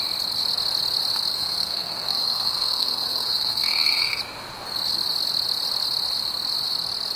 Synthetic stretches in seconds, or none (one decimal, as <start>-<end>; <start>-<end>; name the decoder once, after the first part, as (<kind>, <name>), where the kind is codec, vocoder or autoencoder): 1.3-4.2 (codec, SNAC)